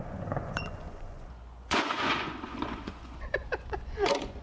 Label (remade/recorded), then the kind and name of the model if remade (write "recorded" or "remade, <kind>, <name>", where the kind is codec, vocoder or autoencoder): remade, vocoder, Vocos